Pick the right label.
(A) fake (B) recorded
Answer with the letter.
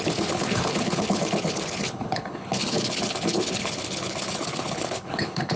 A